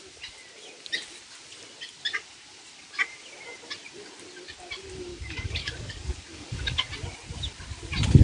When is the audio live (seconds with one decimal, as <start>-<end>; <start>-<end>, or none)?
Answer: 0.0-5.1; 6.9-8.2